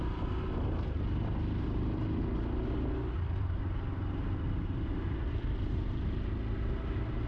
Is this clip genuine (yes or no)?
yes